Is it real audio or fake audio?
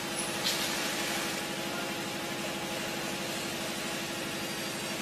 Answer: real